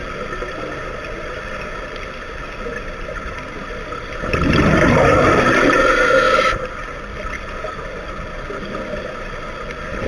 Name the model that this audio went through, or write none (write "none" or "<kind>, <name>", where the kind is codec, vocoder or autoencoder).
none